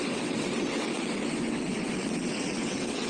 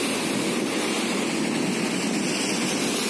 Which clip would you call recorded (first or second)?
second